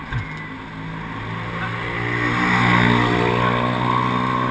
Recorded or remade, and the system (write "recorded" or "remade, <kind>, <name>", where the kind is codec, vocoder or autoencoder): recorded